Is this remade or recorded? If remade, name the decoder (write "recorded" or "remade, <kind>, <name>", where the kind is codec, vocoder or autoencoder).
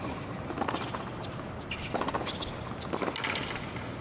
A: recorded